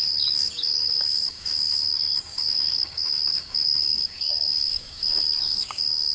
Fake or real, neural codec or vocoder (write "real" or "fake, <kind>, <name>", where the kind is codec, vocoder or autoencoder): fake, codec, DAC